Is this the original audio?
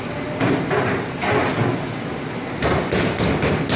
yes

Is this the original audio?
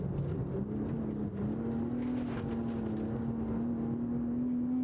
yes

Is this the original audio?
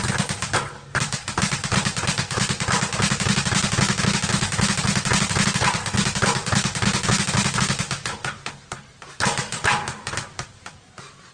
yes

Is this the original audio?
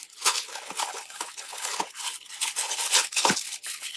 no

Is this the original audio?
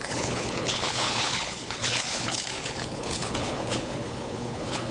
no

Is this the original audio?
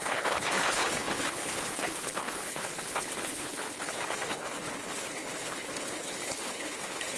no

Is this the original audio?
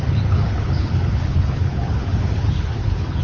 no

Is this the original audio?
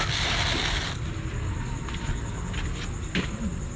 yes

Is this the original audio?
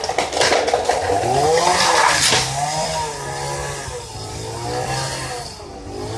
yes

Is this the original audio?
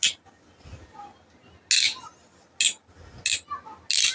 yes